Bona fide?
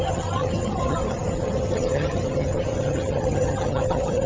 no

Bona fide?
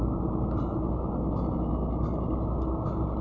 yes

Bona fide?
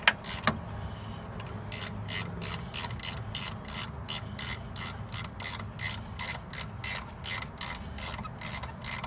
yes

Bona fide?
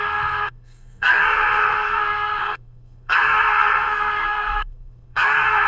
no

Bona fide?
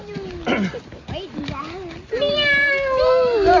yes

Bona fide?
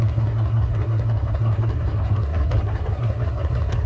no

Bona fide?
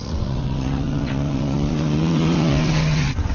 no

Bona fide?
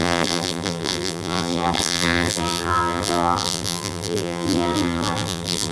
no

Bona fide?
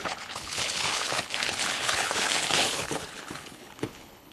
no